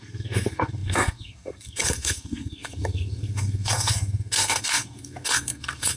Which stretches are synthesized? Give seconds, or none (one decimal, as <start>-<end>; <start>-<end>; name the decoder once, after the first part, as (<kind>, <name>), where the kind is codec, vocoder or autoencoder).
0.0-6.0 (codec, SNAC)